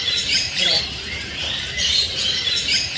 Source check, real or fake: fake